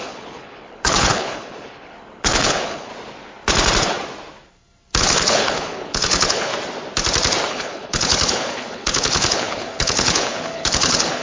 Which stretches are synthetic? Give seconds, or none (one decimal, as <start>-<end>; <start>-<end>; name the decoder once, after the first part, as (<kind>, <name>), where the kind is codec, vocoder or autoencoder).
0.0-2.9 (codec, HILCodec); 5.0-6.5; 7.5-11.2